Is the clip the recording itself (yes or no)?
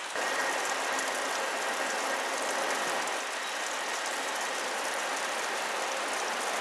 yes